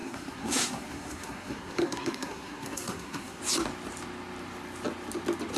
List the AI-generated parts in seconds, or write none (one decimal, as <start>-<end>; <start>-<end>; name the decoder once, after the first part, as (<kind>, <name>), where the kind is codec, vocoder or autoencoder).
0.0-3.4 (codec, SNAC)